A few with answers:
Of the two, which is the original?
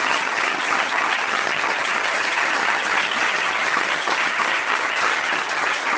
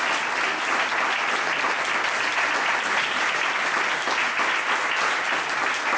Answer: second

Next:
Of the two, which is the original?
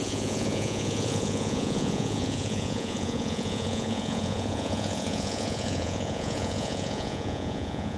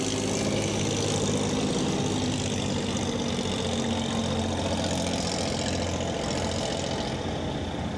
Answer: second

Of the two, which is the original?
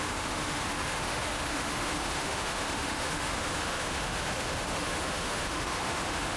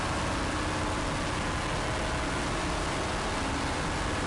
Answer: second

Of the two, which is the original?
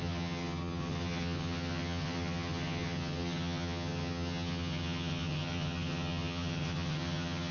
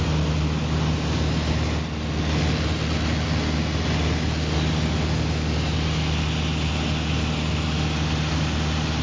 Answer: second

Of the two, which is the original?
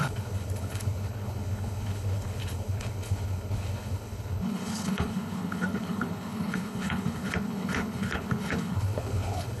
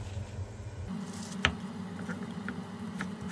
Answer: second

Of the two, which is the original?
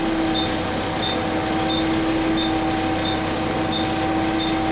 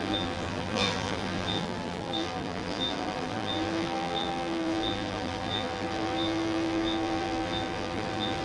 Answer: first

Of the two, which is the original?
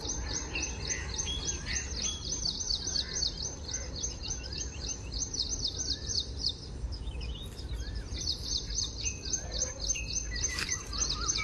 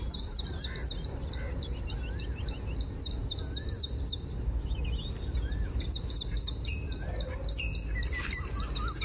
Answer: second